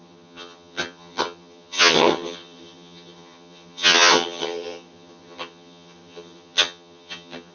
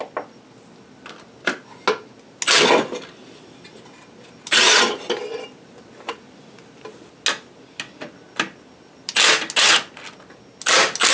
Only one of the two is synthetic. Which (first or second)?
first